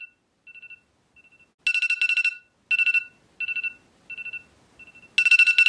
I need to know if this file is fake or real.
real